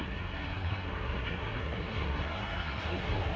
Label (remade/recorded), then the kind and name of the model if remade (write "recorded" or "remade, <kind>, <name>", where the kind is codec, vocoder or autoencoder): remade, codec, SNAC